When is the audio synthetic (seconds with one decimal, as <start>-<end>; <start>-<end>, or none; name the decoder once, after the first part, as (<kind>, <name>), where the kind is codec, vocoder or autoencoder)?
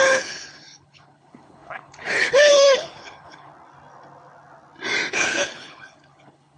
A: 0.0-3.5 (codec, HILCodec); 5.1-6.6